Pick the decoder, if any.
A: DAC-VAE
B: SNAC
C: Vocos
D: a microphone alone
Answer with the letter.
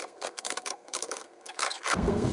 B